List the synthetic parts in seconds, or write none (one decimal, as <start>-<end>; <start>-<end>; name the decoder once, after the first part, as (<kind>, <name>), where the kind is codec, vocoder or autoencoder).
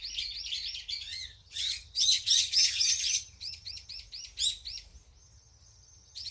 1.1-3.9 (vocoder, HiFi-GAN); 5.2-6.3